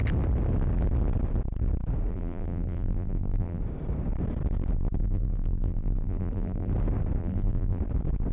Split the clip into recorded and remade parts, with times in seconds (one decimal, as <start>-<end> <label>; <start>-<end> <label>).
0.0-2.1 recorded; 2.1-3.6 remade; 3.6-5.0 recorded; 5.0-6.7 remade; 6.7-7.2 recorded; 7.2-7.8 remade; 7.8-8.3 recorded